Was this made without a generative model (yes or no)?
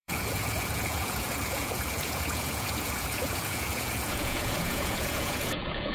no